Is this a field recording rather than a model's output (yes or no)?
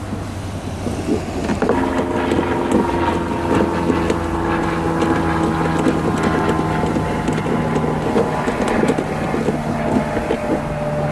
yes